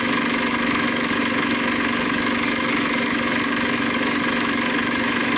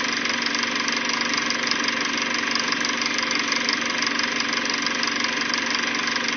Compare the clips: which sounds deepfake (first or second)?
first